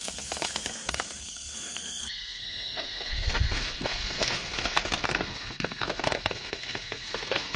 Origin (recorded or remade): remade